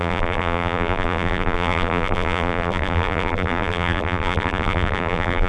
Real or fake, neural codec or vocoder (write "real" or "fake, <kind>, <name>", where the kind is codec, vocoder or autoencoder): fake, vocoder, BigVGAN v2